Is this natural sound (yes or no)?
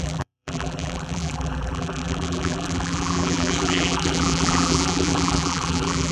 no